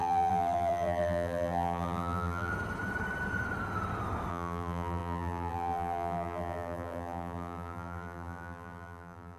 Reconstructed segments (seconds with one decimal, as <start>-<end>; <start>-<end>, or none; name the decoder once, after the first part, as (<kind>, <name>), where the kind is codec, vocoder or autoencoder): 0.0-2.5 (vocoder, BigVGAN v2); 4.3-9.4

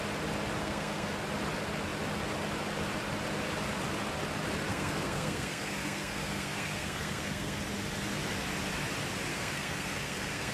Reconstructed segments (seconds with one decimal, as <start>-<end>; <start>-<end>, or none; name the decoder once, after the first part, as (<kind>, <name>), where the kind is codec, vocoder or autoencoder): 0.6-1.1 (codec, SNAC); 4.7-7.6; 9.3-10.5

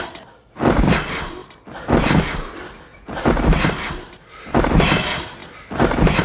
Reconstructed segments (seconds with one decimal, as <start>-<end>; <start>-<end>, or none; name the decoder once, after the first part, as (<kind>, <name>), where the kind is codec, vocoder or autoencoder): none

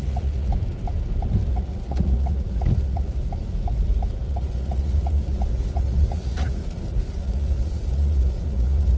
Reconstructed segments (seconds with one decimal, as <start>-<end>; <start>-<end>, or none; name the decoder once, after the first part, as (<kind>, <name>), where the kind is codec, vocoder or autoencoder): 0.0-0.5 (vocoder, Vocos); 1.5-3.2; 4.3-6.6; 7.2-9.0

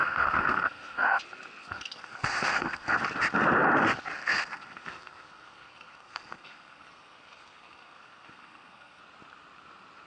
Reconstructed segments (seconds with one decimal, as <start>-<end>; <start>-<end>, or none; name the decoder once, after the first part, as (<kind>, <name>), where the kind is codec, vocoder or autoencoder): 0.0-1.2 (codec, SNAC); 1.6-3.0; 4.2-9.0

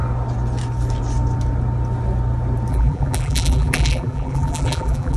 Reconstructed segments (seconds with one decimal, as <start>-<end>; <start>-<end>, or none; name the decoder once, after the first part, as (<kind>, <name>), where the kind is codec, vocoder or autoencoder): 2.7-5.2 (vocoder, BigVGAN v2)

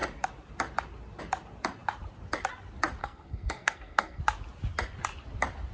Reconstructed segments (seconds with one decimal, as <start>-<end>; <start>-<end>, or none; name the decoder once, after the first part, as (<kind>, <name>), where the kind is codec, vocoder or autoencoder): 3.0-4.2 (codec, SNAC)

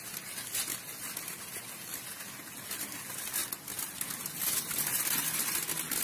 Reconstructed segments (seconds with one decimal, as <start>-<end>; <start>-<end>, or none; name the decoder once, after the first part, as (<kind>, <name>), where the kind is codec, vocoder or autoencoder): none